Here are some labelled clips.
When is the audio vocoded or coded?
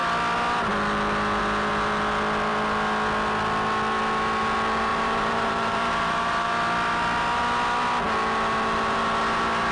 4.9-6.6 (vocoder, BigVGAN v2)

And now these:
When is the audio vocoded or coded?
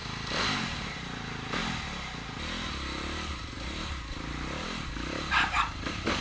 0.0-1.6 (vocoder, BigVGAN v2); 5.3-6.2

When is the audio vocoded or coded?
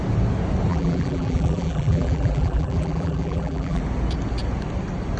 0.7-3.8 (vocoder, BigVGAN v2)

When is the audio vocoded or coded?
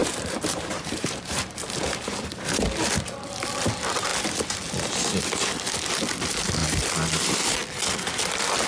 0.0-2.6 (vocoder, BigVGAN v2)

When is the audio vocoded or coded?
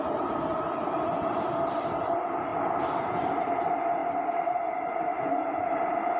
none